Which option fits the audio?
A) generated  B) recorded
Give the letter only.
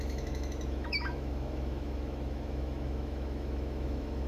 A